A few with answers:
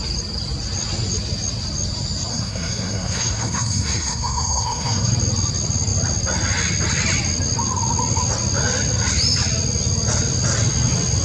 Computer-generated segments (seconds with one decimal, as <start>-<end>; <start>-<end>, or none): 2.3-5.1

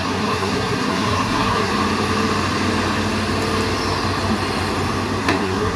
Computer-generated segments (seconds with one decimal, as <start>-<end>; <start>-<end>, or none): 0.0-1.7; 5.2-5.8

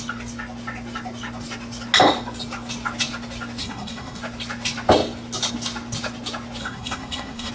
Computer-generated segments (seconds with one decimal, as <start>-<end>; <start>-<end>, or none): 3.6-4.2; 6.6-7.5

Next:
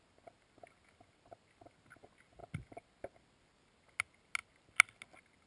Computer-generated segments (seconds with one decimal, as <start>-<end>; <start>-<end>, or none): none

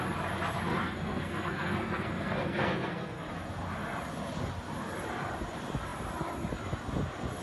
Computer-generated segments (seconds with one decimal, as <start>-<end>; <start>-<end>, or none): 0.7-3.3